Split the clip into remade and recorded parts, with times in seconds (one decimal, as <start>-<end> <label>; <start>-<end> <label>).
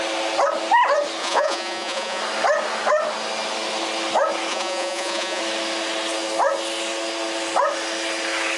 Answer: 0.0-1.2 recorded; 1.2-2.2 remade; 2.2-4.5 recorded; 4.5-5.4 remade; 5.4-8.6 recorded